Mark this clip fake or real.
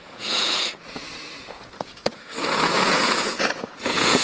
fake